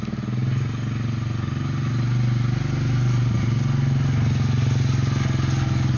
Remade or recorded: recorded